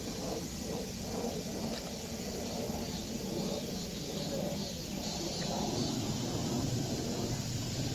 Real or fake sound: real